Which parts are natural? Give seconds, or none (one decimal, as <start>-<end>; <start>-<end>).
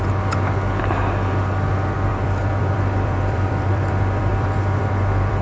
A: 0.0-2.1